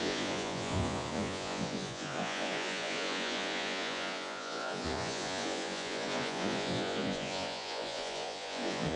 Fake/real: fake